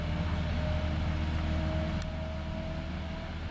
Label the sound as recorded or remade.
recorded